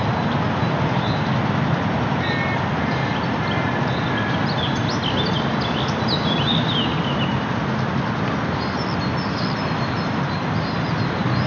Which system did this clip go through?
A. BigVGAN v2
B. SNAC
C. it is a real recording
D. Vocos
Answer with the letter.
C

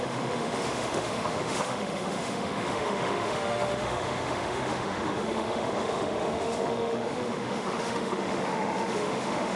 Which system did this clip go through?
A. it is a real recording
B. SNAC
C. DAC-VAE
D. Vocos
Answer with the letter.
C